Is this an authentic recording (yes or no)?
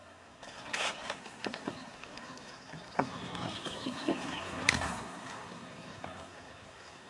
no